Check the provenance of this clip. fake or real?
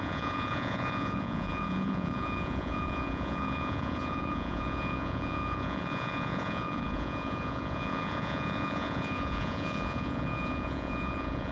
fake